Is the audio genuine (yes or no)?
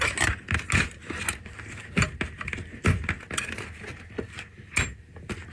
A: yes